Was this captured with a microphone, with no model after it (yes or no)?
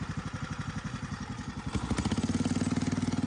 yes